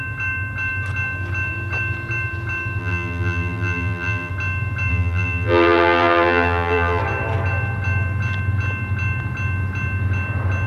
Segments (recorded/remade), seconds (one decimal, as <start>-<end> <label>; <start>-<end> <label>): 0.0-2.8 recorded; 2.8-4.3 remade; 4.3-4.9 recorded; 4.9-7.0 remade; 7.0-10.7 recorded